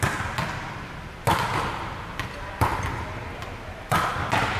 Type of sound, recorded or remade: recorded